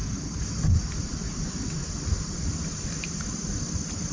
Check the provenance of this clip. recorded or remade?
recorded